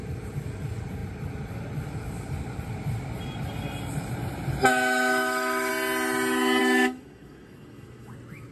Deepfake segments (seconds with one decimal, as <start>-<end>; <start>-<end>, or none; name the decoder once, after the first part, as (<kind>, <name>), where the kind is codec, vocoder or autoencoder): 4.7-5.7 (autoencoder, DAC-VAE); 6.6-8.1